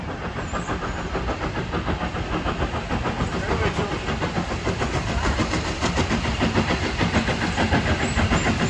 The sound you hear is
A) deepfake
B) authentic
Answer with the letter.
B